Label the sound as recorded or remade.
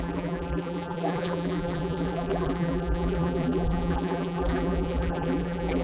remade